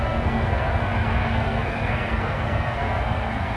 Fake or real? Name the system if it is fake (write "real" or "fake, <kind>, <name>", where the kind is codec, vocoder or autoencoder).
fake, codec, SNAC